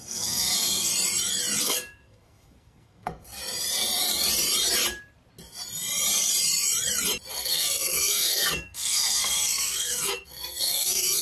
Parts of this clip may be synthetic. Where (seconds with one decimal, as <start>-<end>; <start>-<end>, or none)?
0.0-0.9; 1.6-3.4; 7.3-11.2